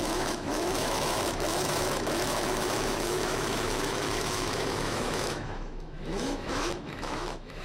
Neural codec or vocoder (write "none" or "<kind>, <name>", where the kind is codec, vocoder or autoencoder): autoencoder, DAC-VAE